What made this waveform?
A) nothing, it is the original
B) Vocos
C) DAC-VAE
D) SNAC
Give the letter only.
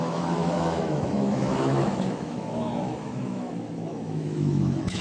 C